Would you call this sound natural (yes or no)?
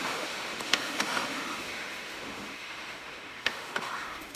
no